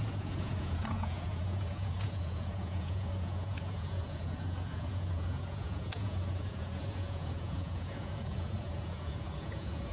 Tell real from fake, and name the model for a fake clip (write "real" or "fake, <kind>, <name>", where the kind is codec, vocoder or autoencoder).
fake, vocoder, Vocos